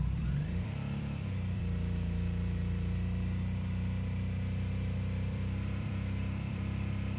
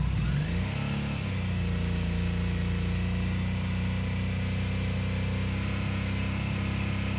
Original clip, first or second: second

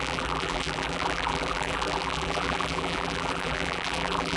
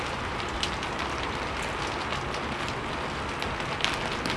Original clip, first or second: second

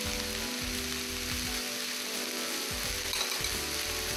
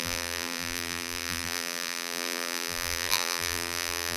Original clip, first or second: first